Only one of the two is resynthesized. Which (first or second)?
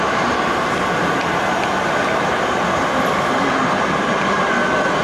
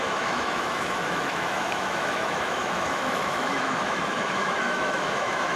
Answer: second